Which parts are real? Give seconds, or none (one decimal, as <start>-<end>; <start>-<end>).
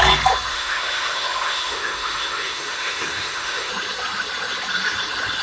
0.0-0.5; 3.7-5.4